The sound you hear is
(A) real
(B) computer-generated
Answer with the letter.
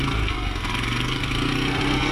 B